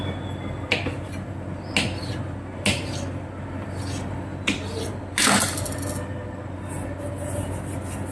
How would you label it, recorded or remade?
recorded